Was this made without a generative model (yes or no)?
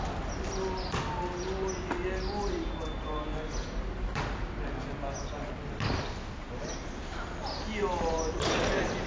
yes